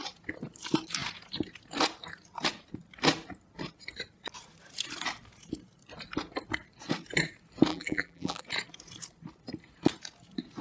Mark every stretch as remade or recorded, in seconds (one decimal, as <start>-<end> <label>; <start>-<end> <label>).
0.0-7.7 recorded; 7.7-8.4 remade; 8.4-10.6 recorded